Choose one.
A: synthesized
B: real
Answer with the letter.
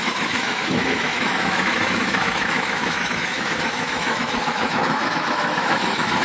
A